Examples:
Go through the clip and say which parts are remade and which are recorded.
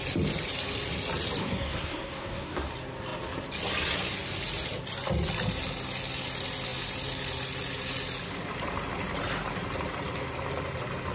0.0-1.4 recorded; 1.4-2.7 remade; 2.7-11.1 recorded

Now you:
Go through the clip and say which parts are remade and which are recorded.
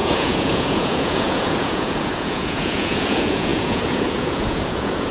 0.0-5.1 remade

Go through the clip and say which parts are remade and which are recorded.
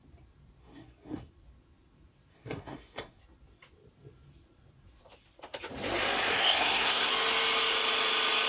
0.0-0.6 recorded; 0.6-1.3 remade; 1.3-2.3 recorded; 2.3-3.2 remade; 3.2-6.3 recorded; 6.3-7.1 remade; 7.1-8.5 recorded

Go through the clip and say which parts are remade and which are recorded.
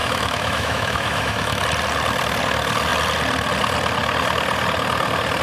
0.0-1.6 remade; 1.6-5.4 recorded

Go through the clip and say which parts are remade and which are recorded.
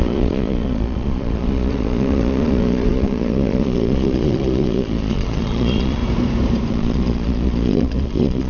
0.0-6.0 remade; 6.0-6.7 recorded; 6.7-8.5 remade